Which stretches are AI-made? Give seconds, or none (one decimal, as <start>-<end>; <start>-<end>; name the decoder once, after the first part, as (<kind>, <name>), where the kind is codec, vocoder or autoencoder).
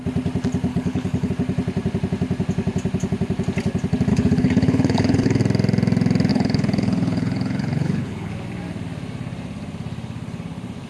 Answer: 0.7-1.3 (codec, HILCodec); 4.1-5.4; 6.3-8.3